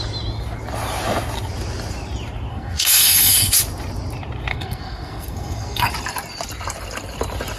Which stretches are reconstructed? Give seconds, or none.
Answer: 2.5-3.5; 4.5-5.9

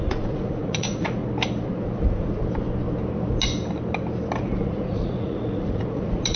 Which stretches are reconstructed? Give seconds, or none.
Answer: 0.0-1.2; 1.8-2.4; 4.4-6.4

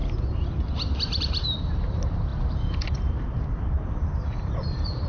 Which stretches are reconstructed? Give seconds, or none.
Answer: 1.2-5.1